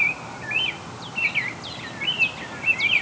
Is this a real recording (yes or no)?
yes